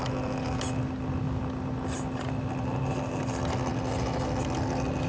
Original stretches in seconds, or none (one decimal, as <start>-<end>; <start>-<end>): 0.0-5.1